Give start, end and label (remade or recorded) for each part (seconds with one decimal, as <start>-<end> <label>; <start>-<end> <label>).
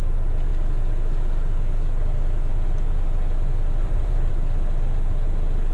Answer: 0.0-3.8 recorded; 3.8-4.3 remade; 4.3-5.7 recorded